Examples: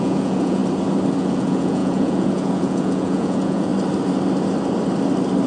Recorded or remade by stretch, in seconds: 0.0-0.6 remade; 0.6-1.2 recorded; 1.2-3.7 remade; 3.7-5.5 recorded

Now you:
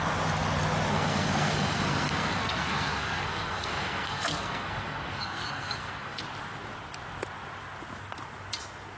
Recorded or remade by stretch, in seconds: 0.0-0.9 recorded; 0.9-6.2 remade; 6.2-9.0 recorded

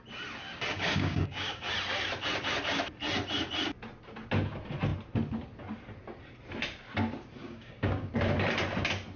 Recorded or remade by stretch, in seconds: 0.0-0.7 recorded; 0.7-1.7 remade; 1.7-7.4 recorded; 7.4-8.1 remade; 8.1-9.2 recorded

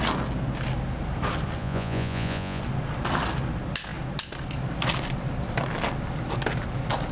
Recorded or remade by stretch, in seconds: 0.0-1.6 recorded; 1.6-2.6 remade; 2.6-7.1 recorded

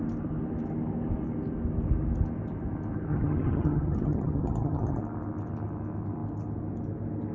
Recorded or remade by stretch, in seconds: 0.0-3.1 recorded; 3.1-5.0 remade; 5.0-7.3 recorded

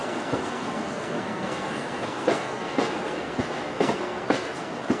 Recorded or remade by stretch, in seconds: 0.0-5.0 remade

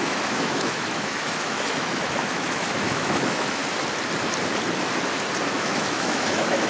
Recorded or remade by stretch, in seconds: 0.0-3.6 remade; 3.6-5.5 recorded; 5.5-6.7 remade

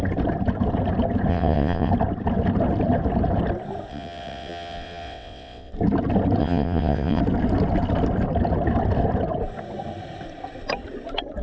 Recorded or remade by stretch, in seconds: 0.0-1.3 recorded; 1.3-1.9 remade; 1.9-3.9 recorded; 3.9-5.7 remade; 5.7-6.4 recorded; 6.4-7.2 remade; 7.2-11.4 recorded